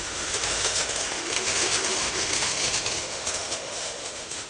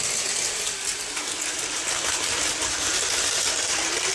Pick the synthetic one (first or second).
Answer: first